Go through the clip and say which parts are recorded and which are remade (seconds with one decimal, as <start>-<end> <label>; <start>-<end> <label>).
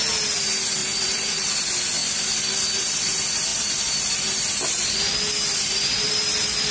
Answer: 0.0-0.8 recorded; 0.8-1.5 remade; 1.5-2.0 recorded; 2.0-3.0 remade; 3.0-3.5 recorded; 3.5-4.5 remade; 4.5-6.7 recorded